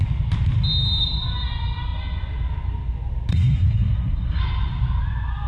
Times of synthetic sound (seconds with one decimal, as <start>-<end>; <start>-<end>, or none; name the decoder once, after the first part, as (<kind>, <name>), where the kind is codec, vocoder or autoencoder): 3.3-4.4 (codec, SNAC)